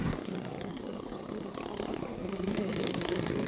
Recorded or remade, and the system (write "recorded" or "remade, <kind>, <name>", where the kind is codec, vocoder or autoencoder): remade, codec, SNAC